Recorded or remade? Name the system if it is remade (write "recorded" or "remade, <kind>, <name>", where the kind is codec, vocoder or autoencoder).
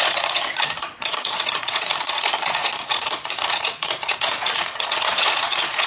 remade, vocoder, Vocos